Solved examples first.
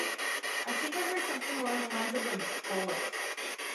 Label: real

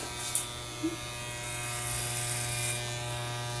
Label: real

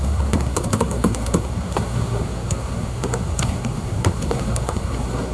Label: fake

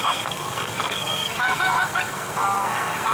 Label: fake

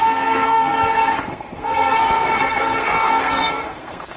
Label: fake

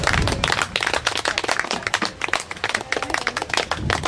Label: real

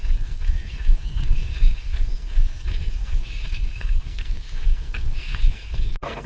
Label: fake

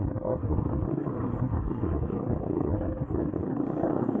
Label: fake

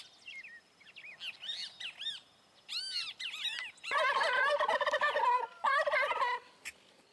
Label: real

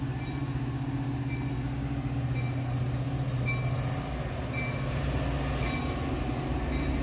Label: real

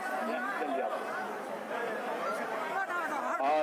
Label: real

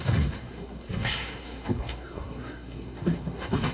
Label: fake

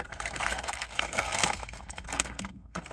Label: fake